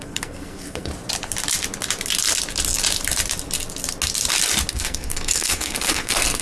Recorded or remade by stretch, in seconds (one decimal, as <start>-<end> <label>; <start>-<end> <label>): 0.0-0.9 remade; 0.9-4.7 recorded; 4.7-6.4 remade